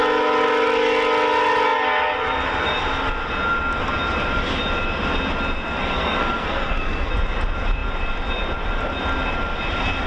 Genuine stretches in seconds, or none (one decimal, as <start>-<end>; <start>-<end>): 0.0-5.8; 7.1-10.1